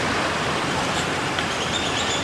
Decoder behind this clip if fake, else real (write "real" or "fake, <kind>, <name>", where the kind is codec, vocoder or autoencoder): real